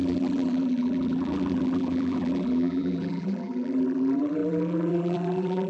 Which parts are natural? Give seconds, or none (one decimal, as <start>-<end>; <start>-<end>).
none